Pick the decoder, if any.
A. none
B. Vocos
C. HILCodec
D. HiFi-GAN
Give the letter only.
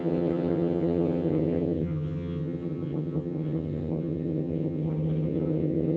D